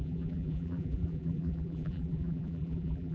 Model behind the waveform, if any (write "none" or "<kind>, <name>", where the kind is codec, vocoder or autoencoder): vocoder, BigVGAN v2